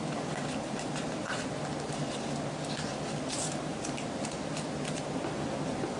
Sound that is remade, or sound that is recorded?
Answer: recorded